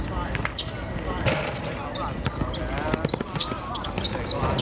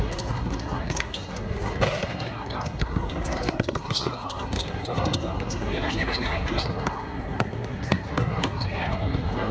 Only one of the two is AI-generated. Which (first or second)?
second